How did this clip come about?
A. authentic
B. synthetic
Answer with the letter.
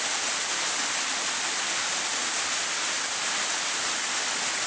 A